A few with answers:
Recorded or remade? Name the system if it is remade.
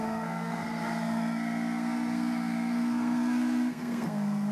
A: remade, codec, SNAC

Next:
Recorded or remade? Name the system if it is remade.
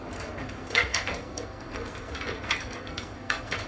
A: remade, codec, SNAC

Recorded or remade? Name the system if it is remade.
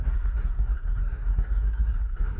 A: remade, codec, SNAC